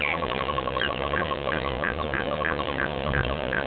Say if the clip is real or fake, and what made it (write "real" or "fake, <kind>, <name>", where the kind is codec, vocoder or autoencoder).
fake, vocoder, Vocos